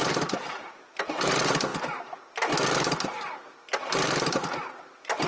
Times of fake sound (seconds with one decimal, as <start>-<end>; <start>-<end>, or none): 0.0-1.7